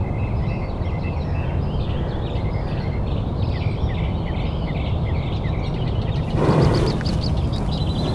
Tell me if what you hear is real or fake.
real